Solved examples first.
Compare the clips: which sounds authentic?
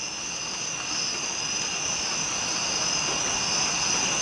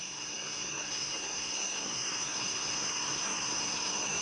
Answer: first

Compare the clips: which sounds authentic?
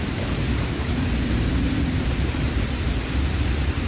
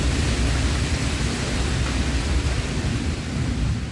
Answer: second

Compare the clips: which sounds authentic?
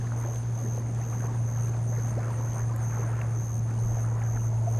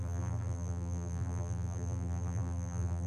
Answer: first